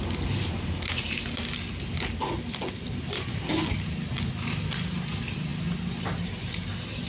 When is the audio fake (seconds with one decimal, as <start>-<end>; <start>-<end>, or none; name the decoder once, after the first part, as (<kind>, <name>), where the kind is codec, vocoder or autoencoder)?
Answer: none